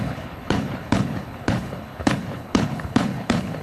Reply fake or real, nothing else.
fake